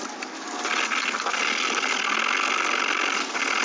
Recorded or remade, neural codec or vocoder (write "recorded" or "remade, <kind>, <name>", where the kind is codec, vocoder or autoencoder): recorded